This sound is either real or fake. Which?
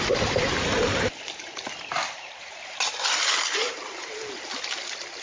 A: real